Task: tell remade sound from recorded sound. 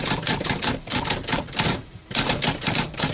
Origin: remade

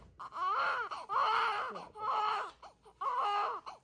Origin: recorded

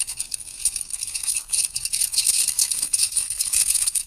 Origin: remade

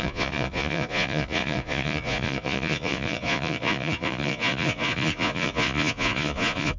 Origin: remade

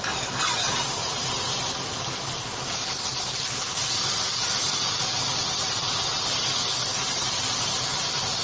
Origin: recorded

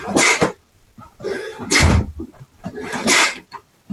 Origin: remade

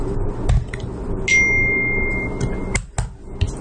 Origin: recorded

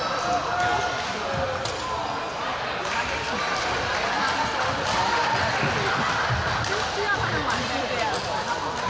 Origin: recorded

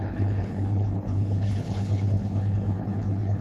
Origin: remade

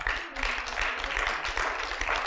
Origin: recorded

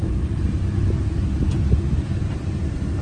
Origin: recorded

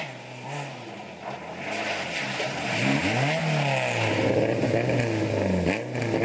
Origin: recorded